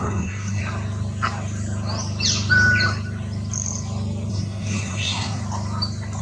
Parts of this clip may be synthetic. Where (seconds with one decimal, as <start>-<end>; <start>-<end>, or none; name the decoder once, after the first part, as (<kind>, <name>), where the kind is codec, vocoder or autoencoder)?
0.0-0.6 (codec, SNAC); 4.3-5.4